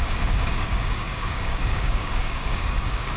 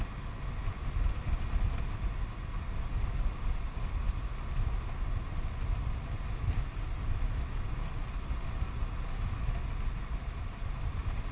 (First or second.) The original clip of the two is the second